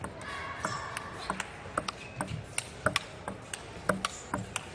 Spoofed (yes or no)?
no